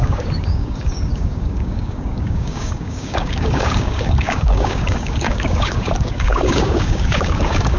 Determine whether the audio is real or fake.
fake